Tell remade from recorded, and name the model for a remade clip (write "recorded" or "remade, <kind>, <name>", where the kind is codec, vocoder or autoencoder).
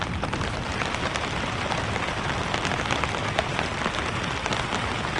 recorded